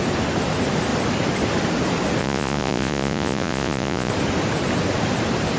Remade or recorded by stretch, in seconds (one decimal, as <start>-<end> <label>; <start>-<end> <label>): 0.0-2.2 recorded; 2.2-4.1 remade; 4.1-5.6 recorded